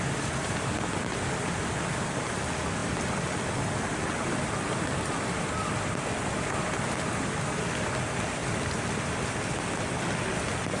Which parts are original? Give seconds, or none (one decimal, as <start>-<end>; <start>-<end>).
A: 0.0-10.8